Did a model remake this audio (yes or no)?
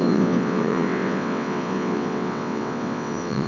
yes